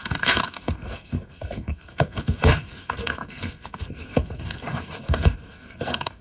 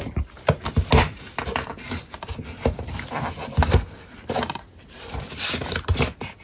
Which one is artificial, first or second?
first